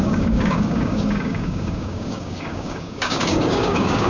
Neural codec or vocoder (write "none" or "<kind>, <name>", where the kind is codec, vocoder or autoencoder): codec, DAC